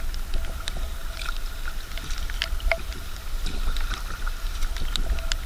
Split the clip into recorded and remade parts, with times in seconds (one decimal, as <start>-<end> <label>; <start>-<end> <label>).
0.0-5.5 recorded